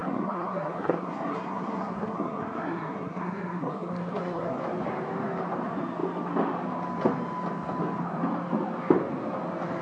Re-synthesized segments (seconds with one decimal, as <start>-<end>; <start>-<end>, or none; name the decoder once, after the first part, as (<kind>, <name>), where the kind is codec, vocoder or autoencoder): 0.0-4.6 (codec, SNAC)